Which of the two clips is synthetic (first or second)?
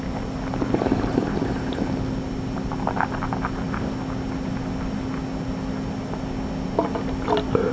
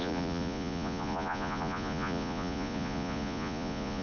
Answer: second